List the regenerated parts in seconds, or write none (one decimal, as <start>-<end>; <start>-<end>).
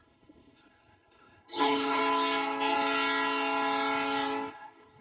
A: 0.0-2.0; 4.5-5.0